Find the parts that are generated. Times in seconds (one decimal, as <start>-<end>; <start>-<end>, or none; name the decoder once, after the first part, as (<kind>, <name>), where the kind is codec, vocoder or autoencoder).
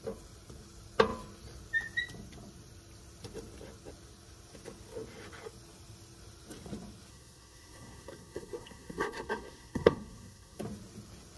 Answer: 7.1-10.6 (codec, SNAC)